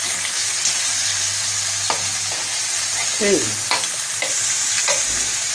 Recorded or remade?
recorded